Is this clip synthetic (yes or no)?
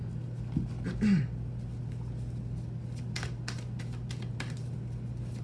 no